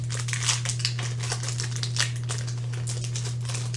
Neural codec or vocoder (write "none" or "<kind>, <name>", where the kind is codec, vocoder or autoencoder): none